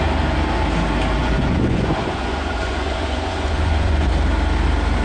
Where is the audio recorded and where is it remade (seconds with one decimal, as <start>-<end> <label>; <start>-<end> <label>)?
0.0-1.2 recorded; 1.2-4.1 remade; 4.1-5.0 recorded